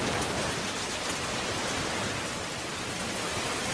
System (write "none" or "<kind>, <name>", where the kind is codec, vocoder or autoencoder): none